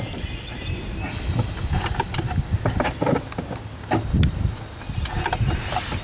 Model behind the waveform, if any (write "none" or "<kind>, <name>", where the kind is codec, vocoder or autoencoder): none